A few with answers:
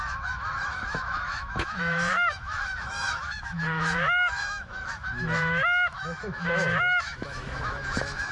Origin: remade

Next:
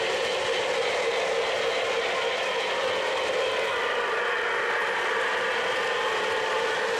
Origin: recorded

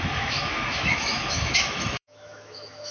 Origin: remade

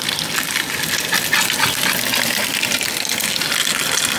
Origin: recorded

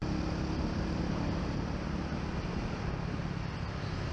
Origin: recorded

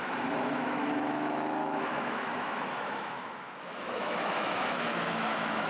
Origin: remade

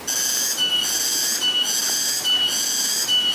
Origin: recorded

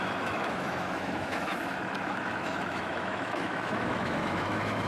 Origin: remade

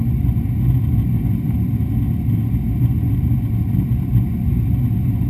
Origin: recorded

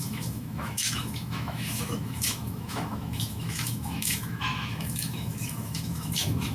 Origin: remade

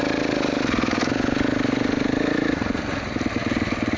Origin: recorded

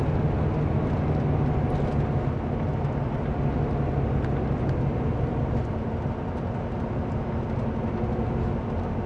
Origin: recorded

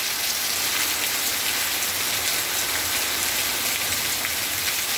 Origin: recorded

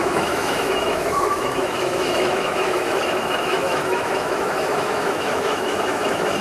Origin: remade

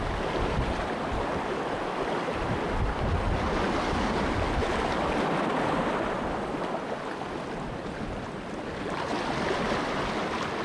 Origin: recorded